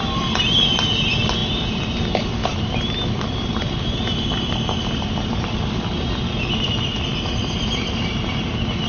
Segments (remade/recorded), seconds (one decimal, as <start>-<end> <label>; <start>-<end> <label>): 0.0-2.4 recorded; 2.4-6.3 remade; 6.3-7.1 recorded; 7.1-8.5 remade; 8.5-8.9 recorded